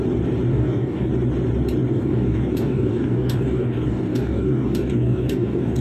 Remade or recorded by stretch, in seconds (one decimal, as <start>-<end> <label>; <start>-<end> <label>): 0.0-0.5 recorded; 0.5-1.1 remade; 1.1-1.9 recorded; 1.9-5.8 remade